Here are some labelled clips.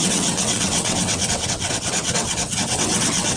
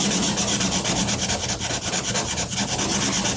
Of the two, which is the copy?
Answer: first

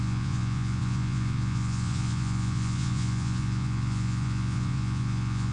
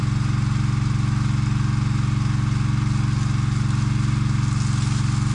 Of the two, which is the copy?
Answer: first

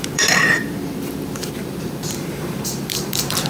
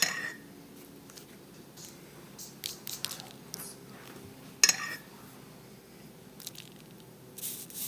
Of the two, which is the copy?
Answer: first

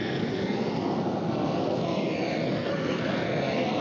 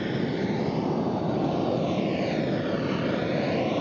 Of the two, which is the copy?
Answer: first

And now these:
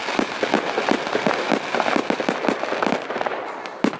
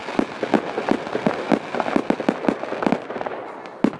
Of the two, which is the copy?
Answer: first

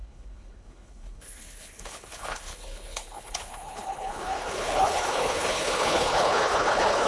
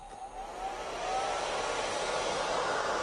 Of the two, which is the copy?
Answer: first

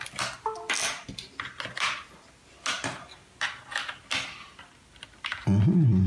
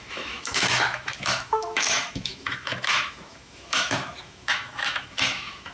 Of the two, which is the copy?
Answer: second